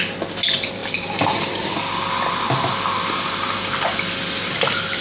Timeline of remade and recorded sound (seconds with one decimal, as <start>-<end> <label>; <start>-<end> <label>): 0.0-5.0 recorded